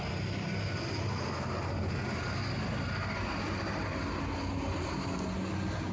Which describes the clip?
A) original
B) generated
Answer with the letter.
A